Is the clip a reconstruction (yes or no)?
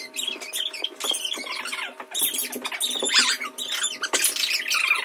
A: no